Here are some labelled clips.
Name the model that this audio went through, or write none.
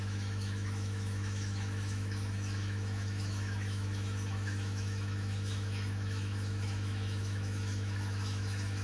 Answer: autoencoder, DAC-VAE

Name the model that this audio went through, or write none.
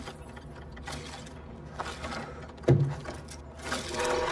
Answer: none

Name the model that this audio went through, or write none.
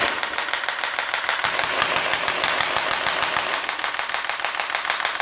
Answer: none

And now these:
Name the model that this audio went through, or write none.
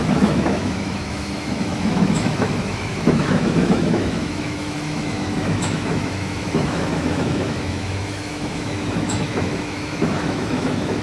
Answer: autoencoder, DAC-VAE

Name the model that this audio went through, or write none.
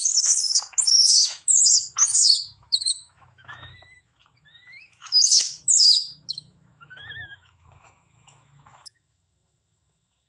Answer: autoencoder, DAC-VAE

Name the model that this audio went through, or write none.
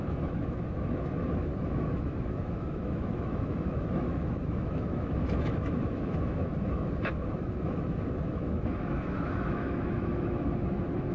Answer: autoencoder, DAC-VAE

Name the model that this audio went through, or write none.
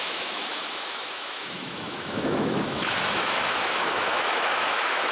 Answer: autoencoder, DAC-VAE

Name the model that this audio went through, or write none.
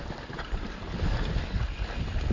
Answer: none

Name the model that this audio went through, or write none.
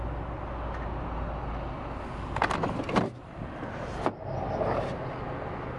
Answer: none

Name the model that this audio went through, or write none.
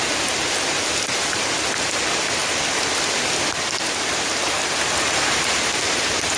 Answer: none